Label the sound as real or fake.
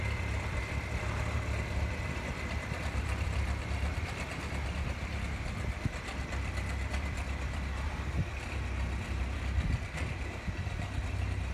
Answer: fake